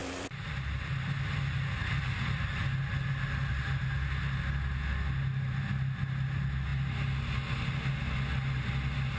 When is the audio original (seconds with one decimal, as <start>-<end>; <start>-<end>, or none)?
2.2-9.2